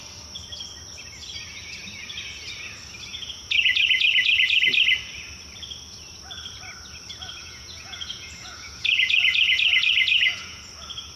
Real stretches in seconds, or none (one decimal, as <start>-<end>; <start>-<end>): 0.0-3.1; 4.6-7.4; 10.6-11.2